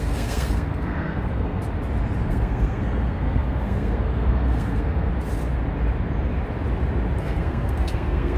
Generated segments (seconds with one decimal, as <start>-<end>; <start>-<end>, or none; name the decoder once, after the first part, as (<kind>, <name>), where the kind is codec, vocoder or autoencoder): 0.0-1.6 (codec, SNAC); 2.2-5.1; 7.2-8.4